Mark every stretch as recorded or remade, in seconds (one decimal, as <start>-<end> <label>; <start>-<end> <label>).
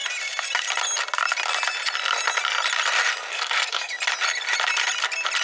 0.0-3.3 recorded; 3.3-3.9 remade; 3.9-5.4 recorded